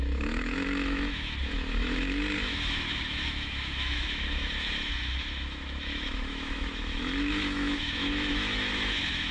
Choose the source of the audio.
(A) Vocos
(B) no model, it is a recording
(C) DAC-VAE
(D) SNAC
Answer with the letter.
C